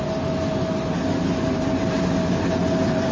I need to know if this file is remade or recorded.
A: recorded